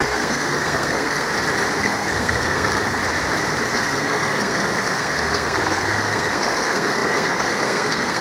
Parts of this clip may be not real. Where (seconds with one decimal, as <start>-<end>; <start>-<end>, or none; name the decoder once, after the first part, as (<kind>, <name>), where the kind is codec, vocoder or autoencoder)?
0.0-1.3 (codec, SNAC); 1.8-3.0; 3.7-8.2